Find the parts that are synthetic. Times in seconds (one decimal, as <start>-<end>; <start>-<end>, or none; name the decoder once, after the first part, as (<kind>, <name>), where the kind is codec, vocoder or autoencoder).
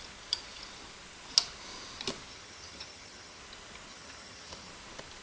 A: 2.3-3.4 (vocoder, HiFi-GAN); 3.9-4.7